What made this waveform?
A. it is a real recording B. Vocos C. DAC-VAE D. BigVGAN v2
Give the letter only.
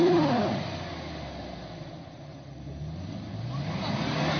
A